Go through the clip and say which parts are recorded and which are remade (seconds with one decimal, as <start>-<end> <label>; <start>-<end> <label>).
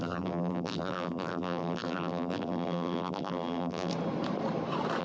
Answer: 0.0-3.9 remade; 3.9-5.0 recorded